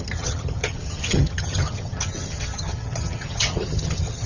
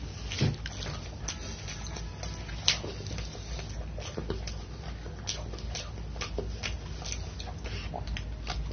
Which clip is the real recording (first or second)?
second